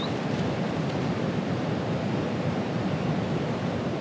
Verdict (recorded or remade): remade